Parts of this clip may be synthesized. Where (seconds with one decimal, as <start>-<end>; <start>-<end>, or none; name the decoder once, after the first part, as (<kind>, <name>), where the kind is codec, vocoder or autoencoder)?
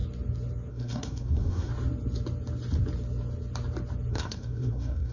0.7-1.7 (codec, SNAC); 4.1-5.1